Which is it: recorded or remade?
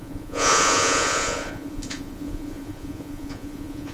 remade